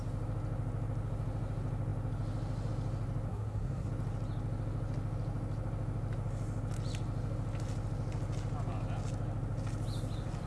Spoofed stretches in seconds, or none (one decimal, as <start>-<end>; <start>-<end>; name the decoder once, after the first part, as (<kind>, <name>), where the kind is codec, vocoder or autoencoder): 3.3-3.9 (codec, SNAC)